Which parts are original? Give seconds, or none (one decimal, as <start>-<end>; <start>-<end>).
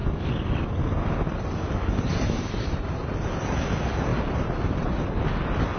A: 0.0-2.1; 3.0-5.8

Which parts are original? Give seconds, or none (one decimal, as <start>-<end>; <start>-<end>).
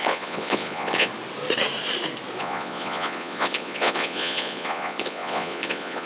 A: 1.1-2.4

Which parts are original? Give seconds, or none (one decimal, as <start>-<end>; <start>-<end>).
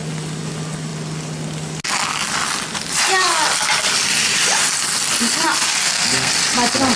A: 0.0-5.8; 6.3-7.0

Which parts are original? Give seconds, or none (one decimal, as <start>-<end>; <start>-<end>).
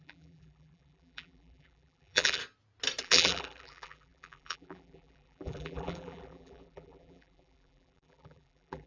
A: 2.4-3.0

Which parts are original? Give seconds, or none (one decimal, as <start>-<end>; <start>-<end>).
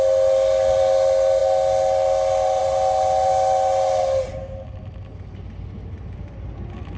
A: 0.0-7.0